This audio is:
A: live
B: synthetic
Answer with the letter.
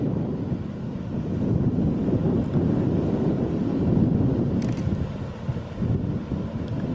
A